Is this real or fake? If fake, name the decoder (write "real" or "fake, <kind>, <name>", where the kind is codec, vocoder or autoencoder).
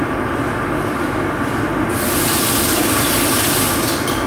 real